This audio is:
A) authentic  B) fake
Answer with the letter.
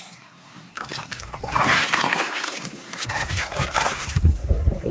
B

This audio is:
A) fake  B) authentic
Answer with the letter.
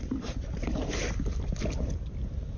A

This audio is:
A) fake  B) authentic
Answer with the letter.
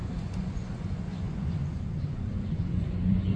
A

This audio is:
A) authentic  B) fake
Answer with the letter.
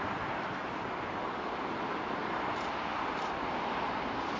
A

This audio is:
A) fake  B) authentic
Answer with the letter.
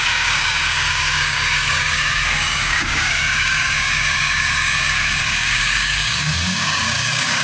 A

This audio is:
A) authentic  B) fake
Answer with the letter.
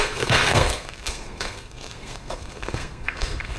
B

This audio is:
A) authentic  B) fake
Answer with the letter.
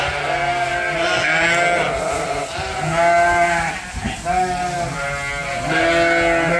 A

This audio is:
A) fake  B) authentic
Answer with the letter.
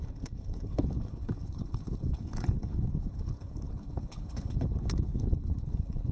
A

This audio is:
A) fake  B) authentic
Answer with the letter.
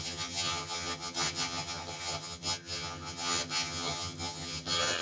A